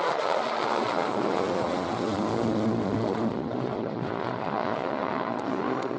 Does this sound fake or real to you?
fake